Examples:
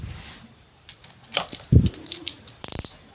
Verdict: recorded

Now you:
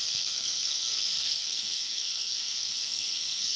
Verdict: remade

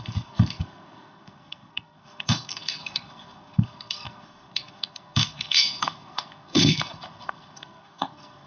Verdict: remade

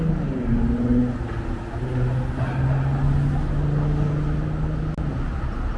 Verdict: recorded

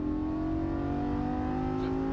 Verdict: recorded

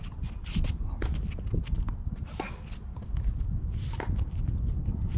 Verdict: recorded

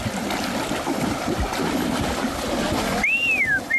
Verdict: recorded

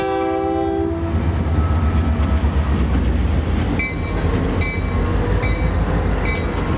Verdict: recorded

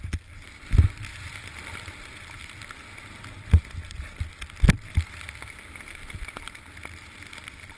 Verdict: recorded